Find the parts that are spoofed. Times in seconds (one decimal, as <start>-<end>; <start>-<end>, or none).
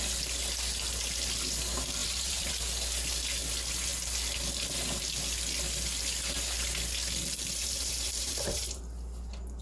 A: 2.0-2.5; 7.6-8.8